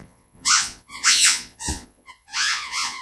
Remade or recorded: remade